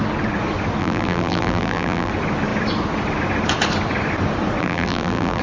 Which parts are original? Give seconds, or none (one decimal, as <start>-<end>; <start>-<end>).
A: 0.0-0.8; 2.1-4.6